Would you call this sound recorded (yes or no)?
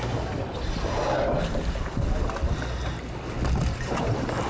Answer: yes